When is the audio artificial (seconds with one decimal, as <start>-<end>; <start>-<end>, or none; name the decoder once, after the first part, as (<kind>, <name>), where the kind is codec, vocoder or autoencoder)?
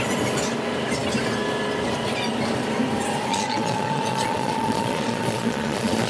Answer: 3.3-6.1 (vocoder, Vocos)